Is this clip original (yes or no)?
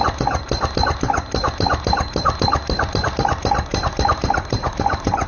no